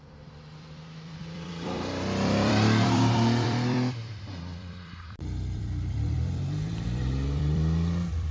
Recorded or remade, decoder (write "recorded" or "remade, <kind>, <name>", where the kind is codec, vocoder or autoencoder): remade, vocoder, BigVGAN v2